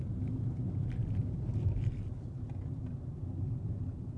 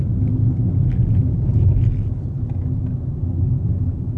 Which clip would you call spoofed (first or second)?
first